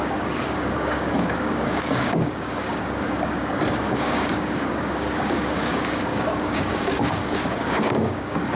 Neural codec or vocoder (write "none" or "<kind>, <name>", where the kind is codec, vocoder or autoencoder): codec, DAC